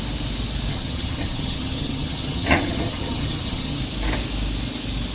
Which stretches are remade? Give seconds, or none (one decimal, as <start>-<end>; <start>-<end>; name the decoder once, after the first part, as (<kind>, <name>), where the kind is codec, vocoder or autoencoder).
0.7-3.8 (vocoder, HiFi-GAN)